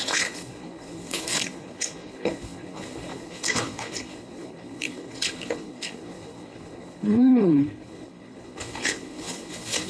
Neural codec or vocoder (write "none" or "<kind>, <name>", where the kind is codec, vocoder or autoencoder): codec, HILCodec